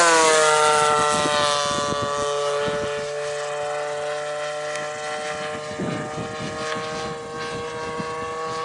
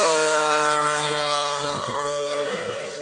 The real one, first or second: first